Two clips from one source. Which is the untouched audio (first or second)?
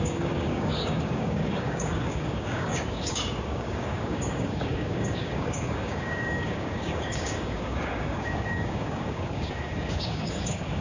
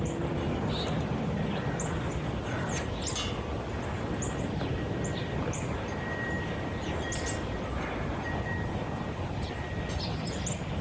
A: second